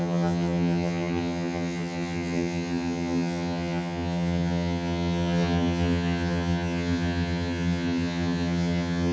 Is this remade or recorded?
remade